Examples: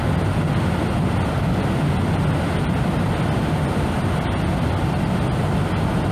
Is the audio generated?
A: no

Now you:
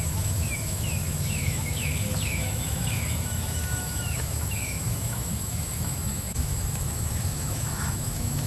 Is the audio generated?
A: yes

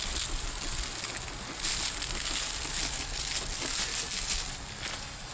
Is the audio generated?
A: no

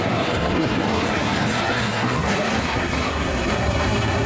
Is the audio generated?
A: yes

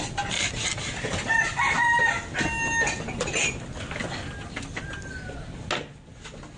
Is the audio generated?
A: no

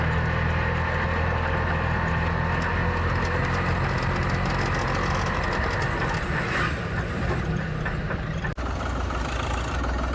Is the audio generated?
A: no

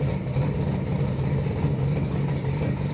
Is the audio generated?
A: no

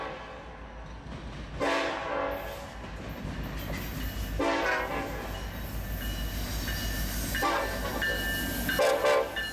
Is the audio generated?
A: no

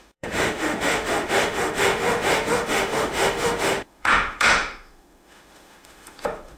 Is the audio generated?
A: yes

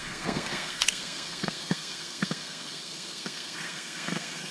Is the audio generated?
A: yes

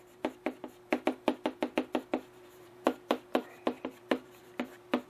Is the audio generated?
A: yes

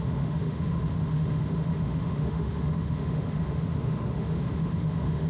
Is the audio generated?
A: yes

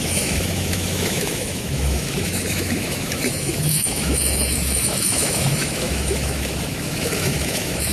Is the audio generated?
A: yes